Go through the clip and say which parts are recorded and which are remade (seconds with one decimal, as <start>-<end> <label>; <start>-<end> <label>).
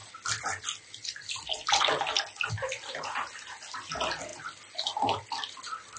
0.0-6.0 recorded